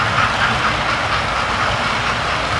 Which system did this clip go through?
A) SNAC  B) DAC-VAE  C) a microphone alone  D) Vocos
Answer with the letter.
C